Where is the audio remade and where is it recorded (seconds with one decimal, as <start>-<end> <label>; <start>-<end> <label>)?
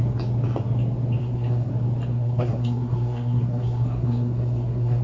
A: 0.0-1.2 recorded; 1.2-1.7 remade; 1.7-2.1 recorded; 2.1-5.0 remade